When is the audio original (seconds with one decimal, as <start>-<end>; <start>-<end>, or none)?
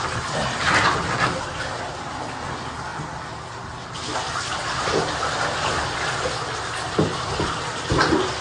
0.0-8.4